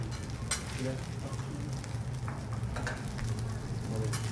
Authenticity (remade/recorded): recorded